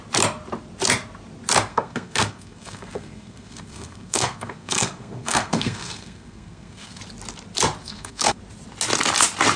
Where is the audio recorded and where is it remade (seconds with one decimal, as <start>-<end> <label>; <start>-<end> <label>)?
0.0-1.7 recorded; 1.7-7.0 remade; 7.0-7.8 recorded; 7.8-8.4 remade; 8.4-9.6 recorded